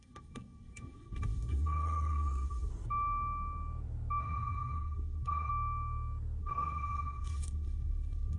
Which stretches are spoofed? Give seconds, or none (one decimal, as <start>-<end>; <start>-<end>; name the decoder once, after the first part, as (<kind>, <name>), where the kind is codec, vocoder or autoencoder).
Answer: 0.0-2.7 (codec, SNAC); 4.2-5.5; 6.4-8.4